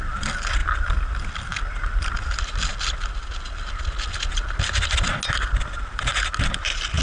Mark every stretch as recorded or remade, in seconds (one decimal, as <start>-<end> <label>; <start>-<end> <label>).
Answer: 0.0-7.0 recorded